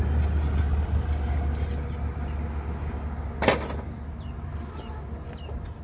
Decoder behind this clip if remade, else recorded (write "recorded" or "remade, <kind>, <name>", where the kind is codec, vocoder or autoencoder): recorded